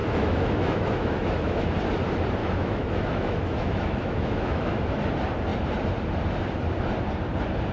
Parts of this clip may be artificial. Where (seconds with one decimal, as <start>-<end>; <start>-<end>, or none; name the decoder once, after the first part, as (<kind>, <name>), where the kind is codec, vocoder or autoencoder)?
0.0-1.7 (autoencoder, DAC-VAE); 2.4-5.0